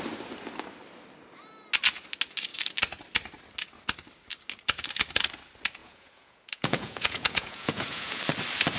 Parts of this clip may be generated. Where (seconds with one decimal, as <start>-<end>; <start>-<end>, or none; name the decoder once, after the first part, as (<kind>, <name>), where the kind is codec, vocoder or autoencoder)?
5.8-8.2 (vocoder, Vocos)